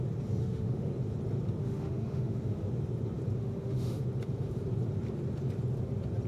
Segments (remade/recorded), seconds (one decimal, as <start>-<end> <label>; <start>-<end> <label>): 0.0-0.4 recorded; 0.4-0.9 remade; 0.9-1.6 recorded; 1.6-2.7 remade; 2.7-3.4 recorded; 3.4-4.0 remade; 4.0-6.3 recorded